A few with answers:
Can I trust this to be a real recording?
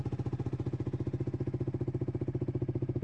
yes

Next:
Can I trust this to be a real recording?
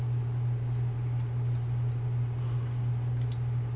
yes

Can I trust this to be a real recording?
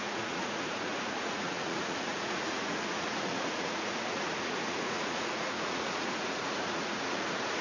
no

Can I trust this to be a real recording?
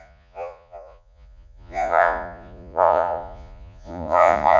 no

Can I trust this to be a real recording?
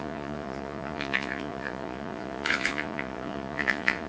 no